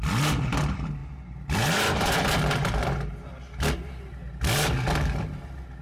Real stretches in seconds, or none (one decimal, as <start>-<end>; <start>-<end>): 0.0-5.8